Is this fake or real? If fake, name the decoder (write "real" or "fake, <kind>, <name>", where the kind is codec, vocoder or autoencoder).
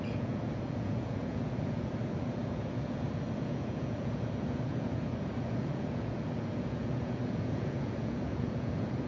fake, vocoder, Vocos